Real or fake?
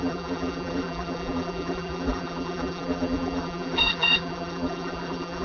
fake